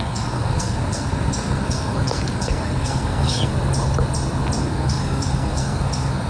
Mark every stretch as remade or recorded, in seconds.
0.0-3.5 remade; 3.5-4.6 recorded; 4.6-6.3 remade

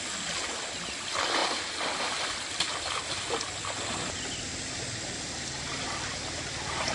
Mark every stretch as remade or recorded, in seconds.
0.0-6.9 recorded

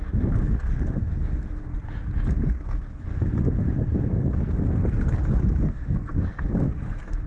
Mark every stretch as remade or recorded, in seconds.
0.0-1.7 remade; 1.7-2.3 recorded; 2.3-7.3 remade

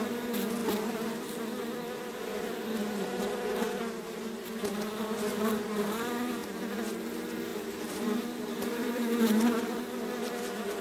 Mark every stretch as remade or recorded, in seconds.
0.0-6.4 recorded; 6.4-7.1 remade; 7.1-7.5 recorded; 7.5-9.8 remade; 9.8-10.8 recorded

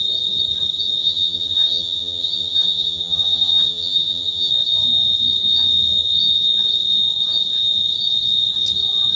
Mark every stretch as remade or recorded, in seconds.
0.0-1.0 recorded; 1.0-4.5 remade; 4.5-9.1 recorded